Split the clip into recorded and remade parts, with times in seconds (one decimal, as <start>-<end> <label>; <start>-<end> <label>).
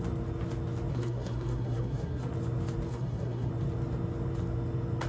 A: 0.0-0.9 recorded; 0.9-2.3 remade; 2.3-2.9 recorded; 2.9-3.5 remade; 3.5-5.1 recorded